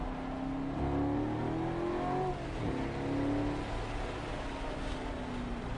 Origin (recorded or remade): recorded